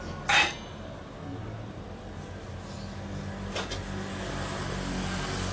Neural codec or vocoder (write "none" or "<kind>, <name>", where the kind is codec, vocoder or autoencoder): none